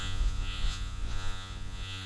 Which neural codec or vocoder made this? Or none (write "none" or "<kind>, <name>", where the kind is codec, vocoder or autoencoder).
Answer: vocoder, Vocos